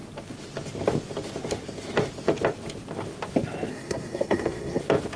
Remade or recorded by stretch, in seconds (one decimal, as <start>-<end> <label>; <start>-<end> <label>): 0.0-3.7 recorded; 3.7-4.8 remade; 4.8-5.2 recorded